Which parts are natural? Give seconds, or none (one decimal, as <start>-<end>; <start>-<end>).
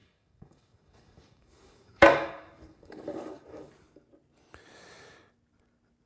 3.7-6.1